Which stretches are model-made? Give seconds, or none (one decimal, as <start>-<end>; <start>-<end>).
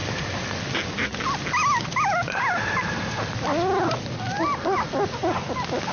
none